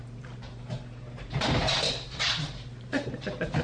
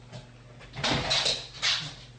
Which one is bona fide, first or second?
second